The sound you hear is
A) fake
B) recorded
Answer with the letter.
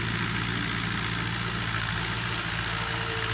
B